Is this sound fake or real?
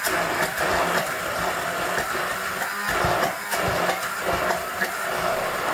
real